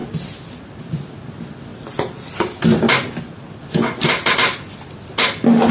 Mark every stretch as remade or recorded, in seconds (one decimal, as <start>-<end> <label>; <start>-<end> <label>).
0.0-5.7 recorded